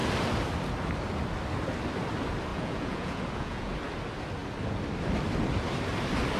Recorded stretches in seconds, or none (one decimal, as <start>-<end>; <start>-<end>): 0.0-2.5; 3.7-6.4